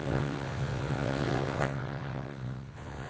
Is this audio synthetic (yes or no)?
yes